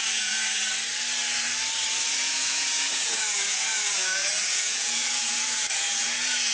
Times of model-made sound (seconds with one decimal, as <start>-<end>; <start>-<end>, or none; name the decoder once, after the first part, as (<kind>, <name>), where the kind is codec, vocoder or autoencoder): 0.0-0.7 (vocoder, Vocos); 2.1-6.5